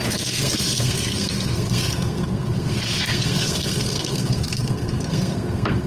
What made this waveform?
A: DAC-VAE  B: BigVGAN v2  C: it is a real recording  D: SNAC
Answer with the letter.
D